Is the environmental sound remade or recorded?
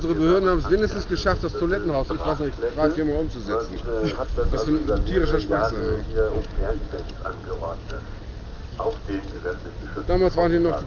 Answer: recorded